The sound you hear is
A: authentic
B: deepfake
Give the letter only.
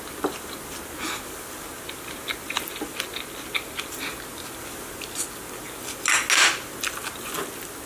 A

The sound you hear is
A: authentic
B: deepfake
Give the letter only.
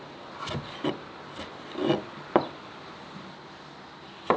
A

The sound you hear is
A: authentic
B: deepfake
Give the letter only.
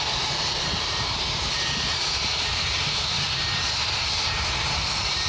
B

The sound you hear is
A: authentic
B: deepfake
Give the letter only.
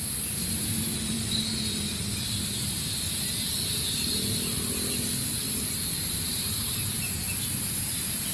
B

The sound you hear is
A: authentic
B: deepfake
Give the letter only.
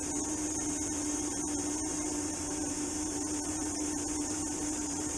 B